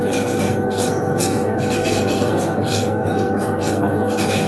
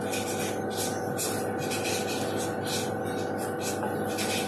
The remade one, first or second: first